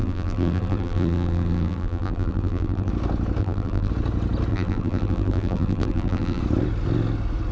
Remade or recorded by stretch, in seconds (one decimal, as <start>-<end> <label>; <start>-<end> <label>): 0.0-2.9 remade; 2.9-3.4 recorded; 3.4-3.9 remade; 3.9-4.5 recorded; 4.5-6.4 remade; 6.4-7.5 recorded